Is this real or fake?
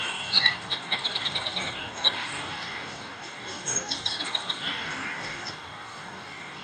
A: fake